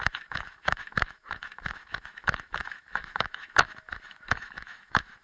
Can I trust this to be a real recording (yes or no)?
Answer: no